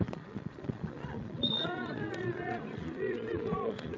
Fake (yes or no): yes